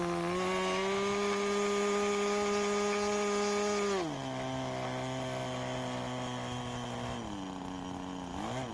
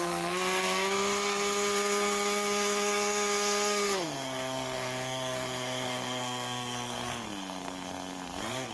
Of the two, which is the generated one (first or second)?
second